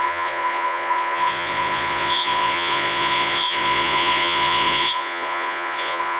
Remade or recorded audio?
remade